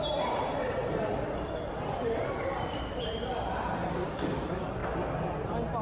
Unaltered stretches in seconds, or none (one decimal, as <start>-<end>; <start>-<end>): 4.8-5.8